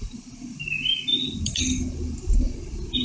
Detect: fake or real real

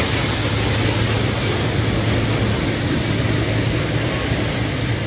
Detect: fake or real real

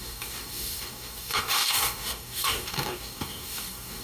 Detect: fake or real fake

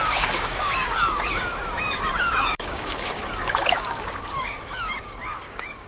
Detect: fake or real fake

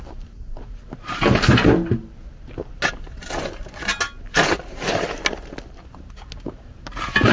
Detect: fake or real real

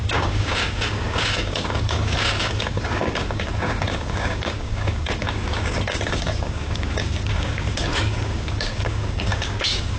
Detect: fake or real fake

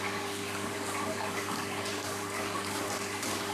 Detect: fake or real fake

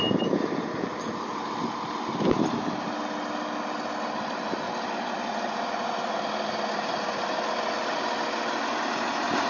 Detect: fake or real real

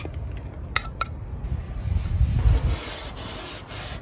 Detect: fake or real real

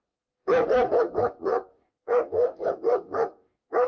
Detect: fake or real fake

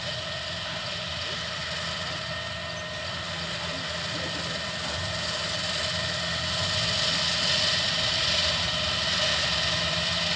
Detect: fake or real real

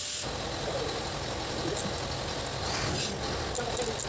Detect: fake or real real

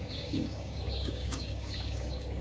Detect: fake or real fake